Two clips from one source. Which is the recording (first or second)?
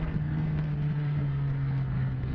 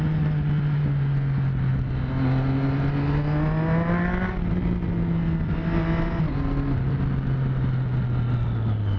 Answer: second